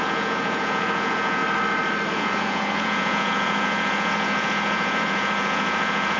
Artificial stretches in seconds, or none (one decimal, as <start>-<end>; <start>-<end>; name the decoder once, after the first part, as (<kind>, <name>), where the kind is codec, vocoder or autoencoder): 0.0-1.4 (vocoder, Vocos); 2.1-6.2